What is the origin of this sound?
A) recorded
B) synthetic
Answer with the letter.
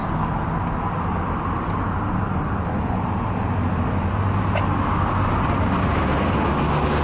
A